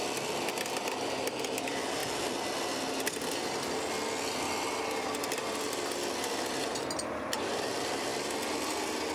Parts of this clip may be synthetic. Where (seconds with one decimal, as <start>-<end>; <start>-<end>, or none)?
0.0-2.0; 6.5-8.1